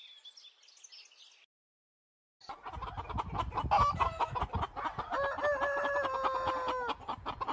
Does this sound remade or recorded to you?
recorded